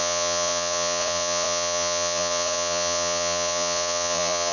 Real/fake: fake